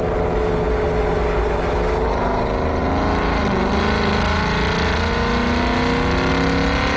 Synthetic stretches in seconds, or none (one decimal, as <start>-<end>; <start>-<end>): none